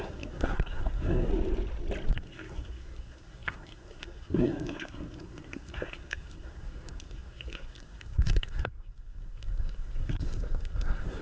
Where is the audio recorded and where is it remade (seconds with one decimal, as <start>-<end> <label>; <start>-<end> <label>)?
0.0-1.3 remade; 1.3-2.1 recorded; 2.1-11.2 remade